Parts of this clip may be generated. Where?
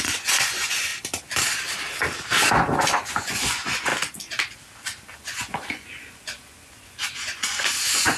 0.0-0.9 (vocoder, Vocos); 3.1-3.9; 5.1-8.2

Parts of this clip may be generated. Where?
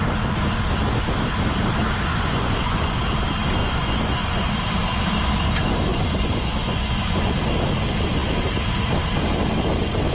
2.1-3.0 (vocoder, Vocos); 3.6-4.4; 5.9-7.3